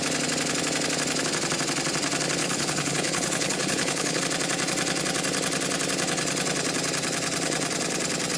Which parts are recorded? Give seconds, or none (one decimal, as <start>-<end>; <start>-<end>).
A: 0.0-2.4; 4.2-8.4

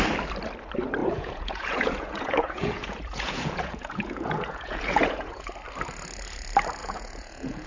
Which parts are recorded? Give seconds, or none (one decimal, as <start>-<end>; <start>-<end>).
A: 0.0-1.0; 5.5-6.8

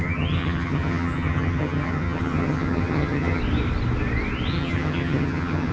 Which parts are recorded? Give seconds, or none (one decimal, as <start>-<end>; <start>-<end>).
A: 3.4-4.5

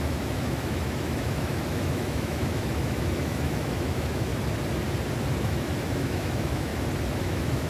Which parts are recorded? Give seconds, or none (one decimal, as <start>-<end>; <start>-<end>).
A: 4.3-5.4; 6.7-7.2

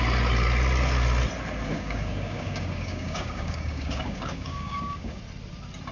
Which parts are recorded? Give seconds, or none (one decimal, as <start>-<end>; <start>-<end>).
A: 0.0-1.7; 5.2-5.9

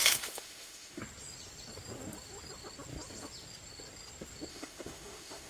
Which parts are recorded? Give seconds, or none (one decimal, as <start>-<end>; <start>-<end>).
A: 1.0-4.5

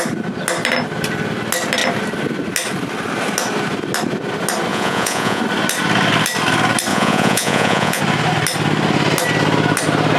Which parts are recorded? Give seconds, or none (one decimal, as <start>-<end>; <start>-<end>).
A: 0.0-4.7; 5.4-6.9; 8.0-10.2

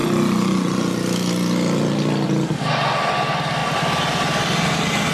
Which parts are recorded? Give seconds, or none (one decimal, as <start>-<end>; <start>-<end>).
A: 0.0-5.1